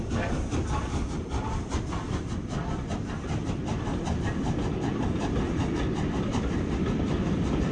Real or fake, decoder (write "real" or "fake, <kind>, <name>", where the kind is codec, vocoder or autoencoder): real